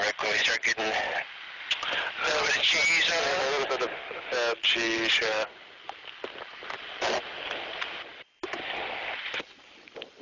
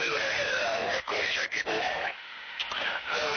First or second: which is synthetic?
second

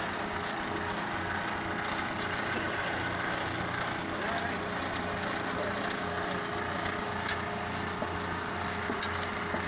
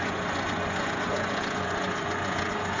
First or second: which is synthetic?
second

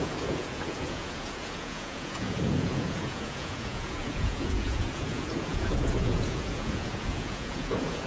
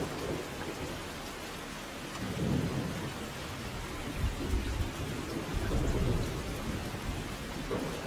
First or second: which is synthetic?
first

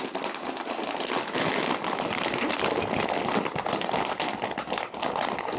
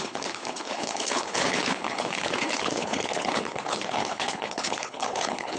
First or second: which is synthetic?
second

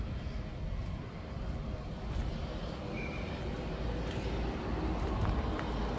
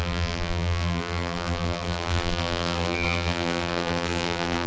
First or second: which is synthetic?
second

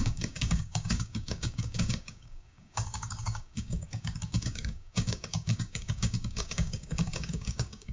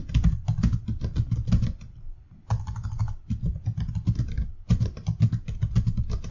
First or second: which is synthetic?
first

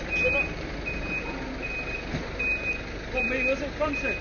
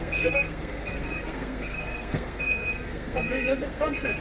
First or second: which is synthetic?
second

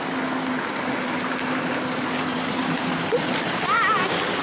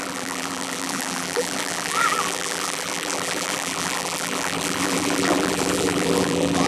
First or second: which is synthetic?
second